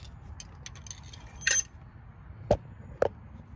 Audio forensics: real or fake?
real